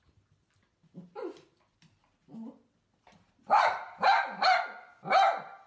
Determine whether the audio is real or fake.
real